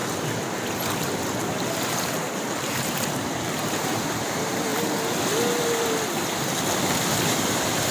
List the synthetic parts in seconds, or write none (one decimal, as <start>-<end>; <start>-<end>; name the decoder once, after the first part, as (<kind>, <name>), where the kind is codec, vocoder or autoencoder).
1.9-4.7 (vocoder, BigVGAN v2); 7.0-7.9